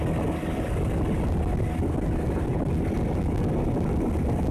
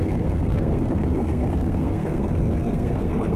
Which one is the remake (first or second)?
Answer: second